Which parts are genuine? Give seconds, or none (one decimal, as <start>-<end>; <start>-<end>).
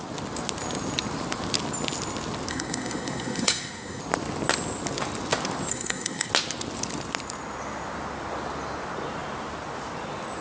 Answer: 0.0-2.5; 4.0-5.7; 6.3-10.4